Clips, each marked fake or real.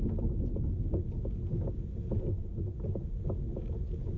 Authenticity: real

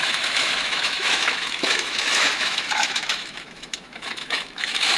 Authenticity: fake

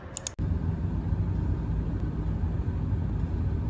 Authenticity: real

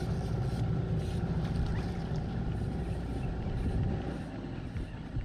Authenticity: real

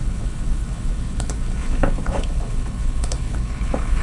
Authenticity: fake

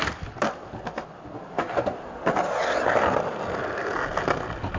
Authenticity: real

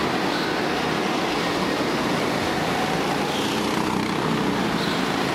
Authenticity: real